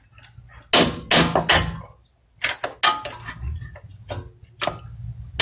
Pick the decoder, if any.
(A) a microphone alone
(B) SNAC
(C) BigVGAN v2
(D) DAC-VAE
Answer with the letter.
A